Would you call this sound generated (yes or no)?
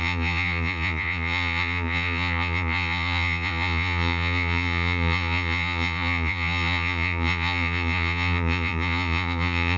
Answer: yes